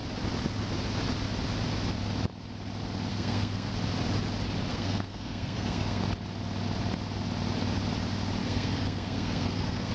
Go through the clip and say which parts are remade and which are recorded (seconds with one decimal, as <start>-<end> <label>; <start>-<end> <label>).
0.0-3.1 recorded; 3.1-3.7 remade; 3.7-4.7 recorded; 4.7-6.0 remade; 6.0-8.4 recorded; 8.4-9.9 remade